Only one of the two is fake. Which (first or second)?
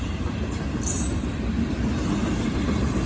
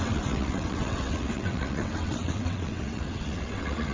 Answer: second